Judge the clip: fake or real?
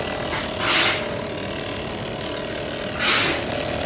real